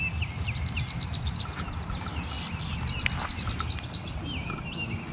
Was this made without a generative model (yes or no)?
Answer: yes